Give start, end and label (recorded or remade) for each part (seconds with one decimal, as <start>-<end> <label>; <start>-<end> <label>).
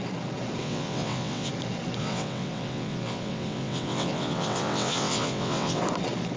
0.0-0.6 recorded; 0.6-1.5 remade; 1.5-2.0 recorded; 2.0-5.8 remade; 5.8-6.4 recorded